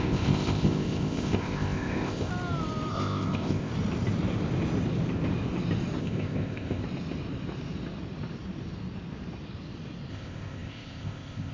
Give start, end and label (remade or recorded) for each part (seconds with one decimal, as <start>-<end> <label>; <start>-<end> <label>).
0.0-2.3 remade; 2.3-2.9 recorded; 2.9-3.7 remade; 3.7-6.0 recorded; 6.0-6.8 remade; 6.8-10.1 recorded; 10.1-11.5 remade

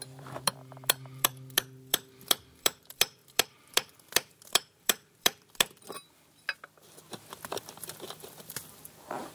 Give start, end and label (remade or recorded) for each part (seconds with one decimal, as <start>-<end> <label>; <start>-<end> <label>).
0.0-9.3 remade

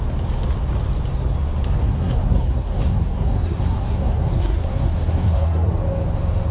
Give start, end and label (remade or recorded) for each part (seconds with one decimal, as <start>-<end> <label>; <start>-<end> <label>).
0.0-1.8 recorded; 1.8-5.7 remade; 5.7-6.5 recorded

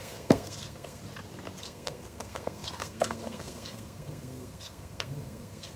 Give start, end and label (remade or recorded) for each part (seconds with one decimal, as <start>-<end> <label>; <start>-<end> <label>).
0.0-1.0 remade; 1.0-1.6 recorded; 1.6-5.8 remade

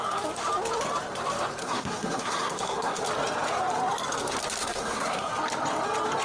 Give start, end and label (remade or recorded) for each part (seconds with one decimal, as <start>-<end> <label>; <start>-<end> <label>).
0.0-1.6 recorded; 1.6-3.0 remade; 3.0-4.6 recorded; 4.6-5.3 remade; 5.3-6.2 recorded